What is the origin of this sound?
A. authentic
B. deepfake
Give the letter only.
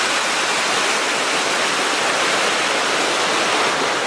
A